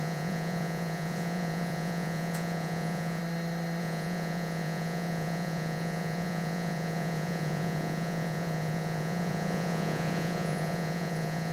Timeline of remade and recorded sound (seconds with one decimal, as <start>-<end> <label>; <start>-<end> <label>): 0.0-3.2 remade; 3.2-3.8 recorded; 3.8-11.5 remade